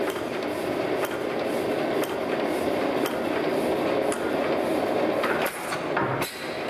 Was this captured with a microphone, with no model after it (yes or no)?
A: yes